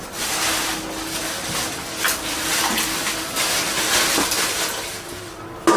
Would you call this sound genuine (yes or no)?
yes